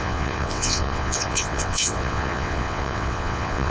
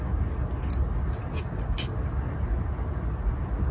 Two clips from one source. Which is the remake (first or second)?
first